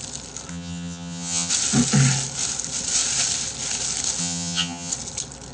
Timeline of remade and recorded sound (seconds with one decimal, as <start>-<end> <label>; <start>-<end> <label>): 0.0-0.5 recorded; 0.5-1.5 remade; 1.5-4.2 recorded; 4.2-4.9 remade; 4.9-5.5 recorded